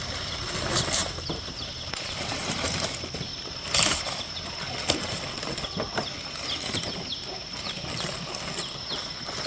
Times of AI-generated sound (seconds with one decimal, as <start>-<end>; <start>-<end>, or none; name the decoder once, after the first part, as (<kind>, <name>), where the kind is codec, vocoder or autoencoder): 1.0-2.7 (vocoder, BigVGAN v2)